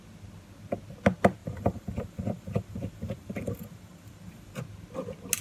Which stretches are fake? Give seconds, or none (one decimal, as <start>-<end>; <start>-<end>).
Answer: 1.4-4.6